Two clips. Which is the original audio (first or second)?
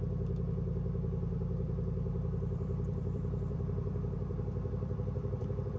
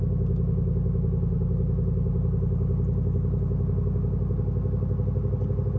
second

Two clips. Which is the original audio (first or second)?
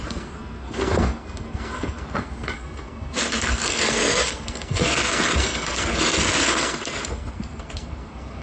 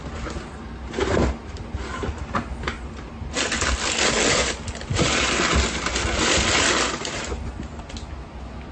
second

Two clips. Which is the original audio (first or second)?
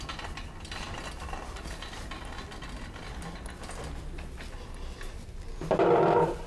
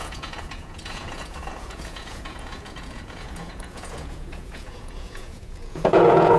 first